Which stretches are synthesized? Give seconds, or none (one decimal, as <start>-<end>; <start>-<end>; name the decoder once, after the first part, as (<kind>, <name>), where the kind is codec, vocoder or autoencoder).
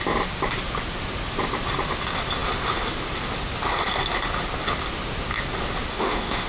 5.9-6.5 (autoencoder, DAC-VAE)